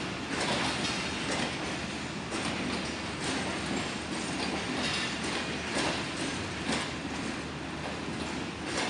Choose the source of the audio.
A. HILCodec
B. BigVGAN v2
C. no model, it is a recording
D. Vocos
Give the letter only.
C